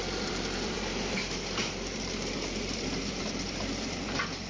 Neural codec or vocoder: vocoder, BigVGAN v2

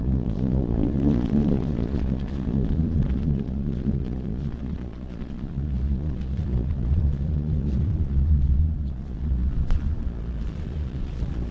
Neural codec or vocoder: vocoder, Vocos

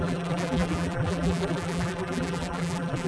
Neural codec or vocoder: vocoder, BigVGAN v2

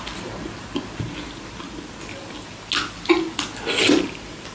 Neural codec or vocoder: none